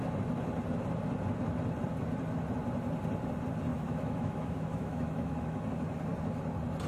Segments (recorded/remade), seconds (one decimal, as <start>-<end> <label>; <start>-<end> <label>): 0.0-3.7 recorded; 3.7-5.6 remade; 5.6-6.9 recorded